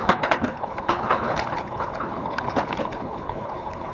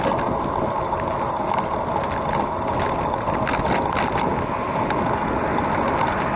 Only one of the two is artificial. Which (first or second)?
first